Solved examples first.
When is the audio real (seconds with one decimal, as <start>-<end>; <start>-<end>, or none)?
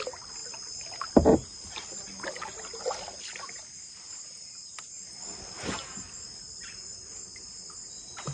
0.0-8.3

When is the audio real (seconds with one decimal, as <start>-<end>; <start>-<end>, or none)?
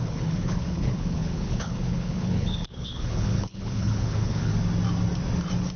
4.5-5.8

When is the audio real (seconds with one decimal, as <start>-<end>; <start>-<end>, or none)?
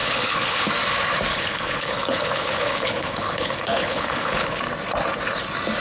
0.7-1.3; 4.6-5.8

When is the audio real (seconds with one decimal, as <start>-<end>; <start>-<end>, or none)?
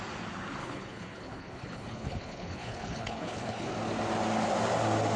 0.0-0.6; 3.7-5.2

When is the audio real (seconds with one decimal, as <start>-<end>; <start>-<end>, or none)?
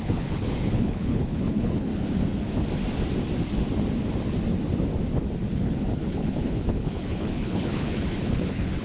1.9-5.5